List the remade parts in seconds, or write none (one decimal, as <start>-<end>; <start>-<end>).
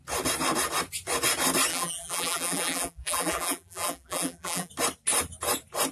1.7-4.7